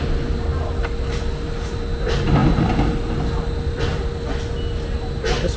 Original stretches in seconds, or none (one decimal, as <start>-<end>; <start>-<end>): 0.0-5.6